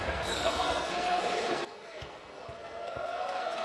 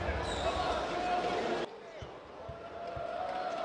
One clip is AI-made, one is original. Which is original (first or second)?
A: second